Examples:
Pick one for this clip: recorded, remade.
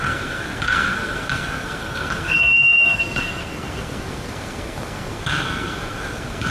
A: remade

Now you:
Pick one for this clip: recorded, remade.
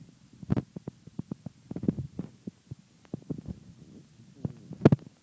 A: recorded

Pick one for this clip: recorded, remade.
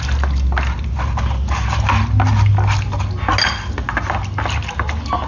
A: recorded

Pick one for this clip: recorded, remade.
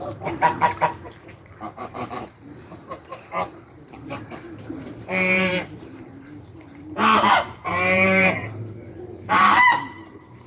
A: remade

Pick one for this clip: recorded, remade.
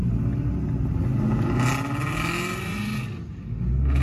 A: recorded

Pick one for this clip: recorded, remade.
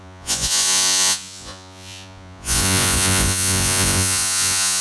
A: remade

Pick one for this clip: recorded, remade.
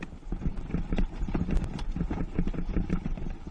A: recorded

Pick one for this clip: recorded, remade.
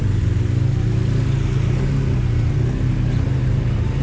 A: recorded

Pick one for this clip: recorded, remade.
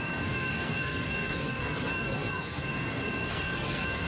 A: remade